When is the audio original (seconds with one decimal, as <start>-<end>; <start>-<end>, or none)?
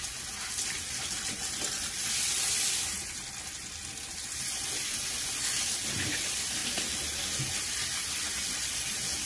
0.0-9.3